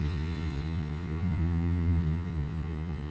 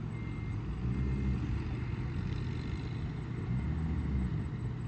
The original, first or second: second